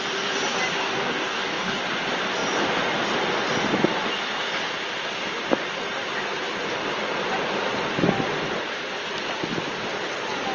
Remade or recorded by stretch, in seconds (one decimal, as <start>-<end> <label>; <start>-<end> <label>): 0.0-0.8 recorded; 0.8-1.8 remade; 1.8-10.5 recorded